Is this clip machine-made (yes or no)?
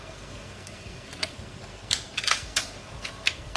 yes